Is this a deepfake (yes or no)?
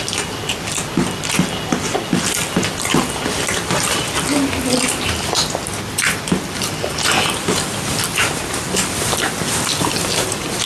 no